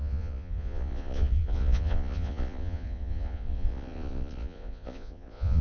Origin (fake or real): fake